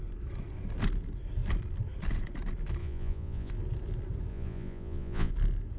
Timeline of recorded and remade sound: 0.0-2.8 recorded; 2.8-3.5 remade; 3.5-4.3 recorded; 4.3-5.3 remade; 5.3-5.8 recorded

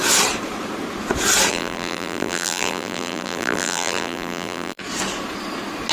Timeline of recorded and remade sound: 0.0-1.5 recorded; 1.5-4.8 remade; 4.8-5.9 recorded